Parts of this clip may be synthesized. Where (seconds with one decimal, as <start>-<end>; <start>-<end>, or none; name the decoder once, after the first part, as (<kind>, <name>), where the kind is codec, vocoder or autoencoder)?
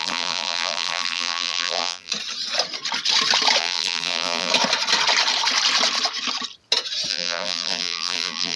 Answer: 0.0-2.1 (vocoder, BigVGAN v2); 3.6-4.5; 7.1-8.6